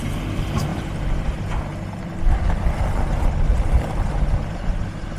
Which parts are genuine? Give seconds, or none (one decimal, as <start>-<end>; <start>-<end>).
0.0-5.2